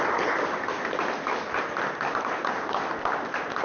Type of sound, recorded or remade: recorded